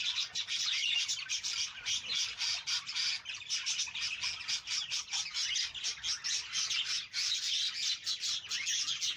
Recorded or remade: recorded